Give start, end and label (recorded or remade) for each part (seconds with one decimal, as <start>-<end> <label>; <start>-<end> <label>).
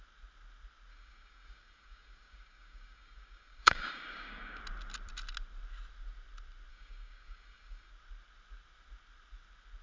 0.0-0.9 recorded; 0.9-4.6 remade; 4.6-6.7 recorded; 6.7-7.9 remade; 7.9-9.8 recorded